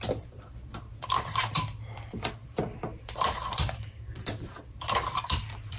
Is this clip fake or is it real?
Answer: fake